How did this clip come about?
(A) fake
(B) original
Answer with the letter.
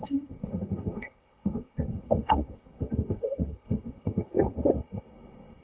A